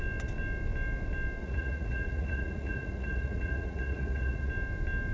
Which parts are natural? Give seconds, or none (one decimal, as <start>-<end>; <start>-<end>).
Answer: 0.0-1.4; 4.5-5.1